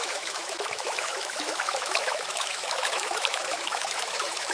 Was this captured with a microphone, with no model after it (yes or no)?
no